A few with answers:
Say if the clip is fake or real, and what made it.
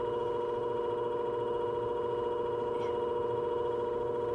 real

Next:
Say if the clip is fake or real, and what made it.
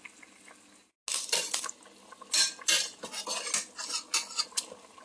real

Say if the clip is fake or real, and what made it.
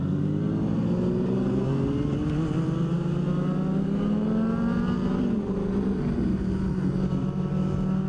real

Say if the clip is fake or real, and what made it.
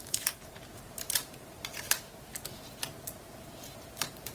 fake, vocoder, BigVGAN v2